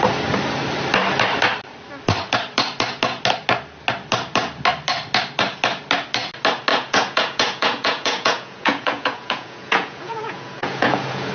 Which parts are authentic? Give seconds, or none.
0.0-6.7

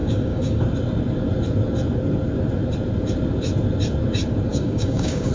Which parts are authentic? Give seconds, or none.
0.6-4.5

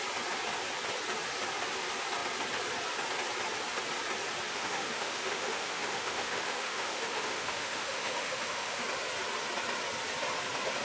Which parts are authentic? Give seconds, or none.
0.0-4.5; 8.8-10.8

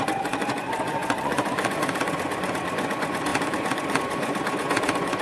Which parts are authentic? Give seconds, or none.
none

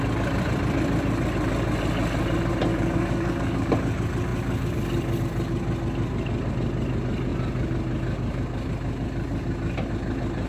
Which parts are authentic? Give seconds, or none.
0.0-2.7; 3.7-10.5